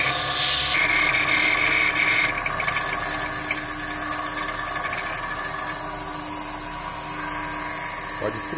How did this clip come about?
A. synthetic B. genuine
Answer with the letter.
B